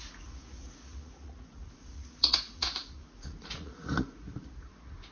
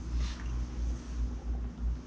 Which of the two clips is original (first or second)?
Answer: second